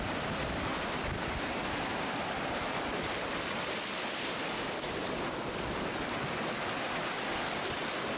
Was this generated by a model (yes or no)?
no